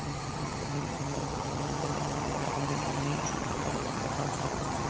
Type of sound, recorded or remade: remade